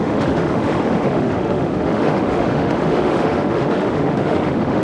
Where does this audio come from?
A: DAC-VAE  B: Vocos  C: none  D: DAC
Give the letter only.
A